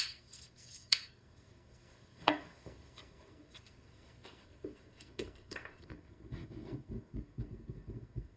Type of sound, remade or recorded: remade